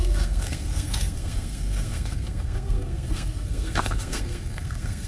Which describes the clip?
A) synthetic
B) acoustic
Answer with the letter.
A